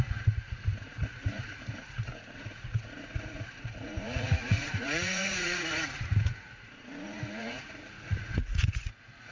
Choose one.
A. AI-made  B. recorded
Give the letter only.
A